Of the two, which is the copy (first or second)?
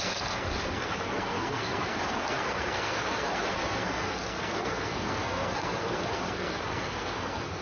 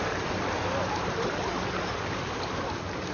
first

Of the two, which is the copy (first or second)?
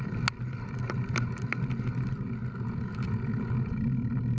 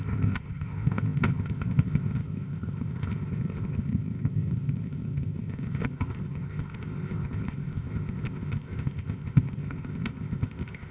second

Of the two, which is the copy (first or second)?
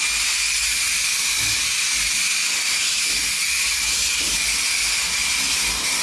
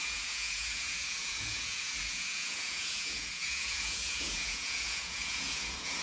second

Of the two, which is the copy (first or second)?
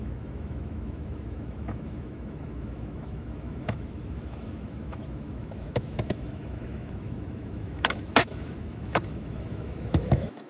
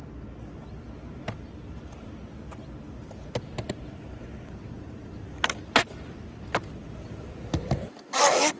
first